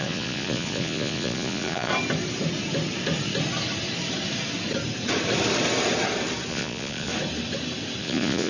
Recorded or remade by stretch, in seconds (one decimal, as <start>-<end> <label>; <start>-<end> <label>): 0.0-1.9 remade; 1.9-6.5 recorded; 6.5-7.1 remade; 7.1-8.0 recorded; 8.0-8.5 remade